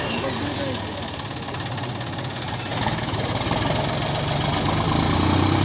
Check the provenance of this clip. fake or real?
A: real